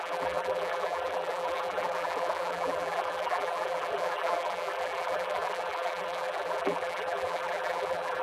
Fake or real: fake